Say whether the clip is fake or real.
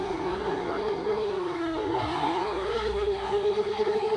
fake